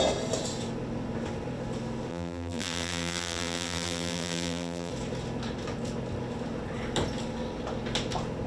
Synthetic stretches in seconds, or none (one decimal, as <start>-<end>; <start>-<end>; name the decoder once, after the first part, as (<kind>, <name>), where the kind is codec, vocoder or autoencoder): 2.1-4.9 (vocoder, BigVGAN v2)